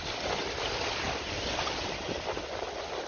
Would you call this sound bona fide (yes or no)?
yes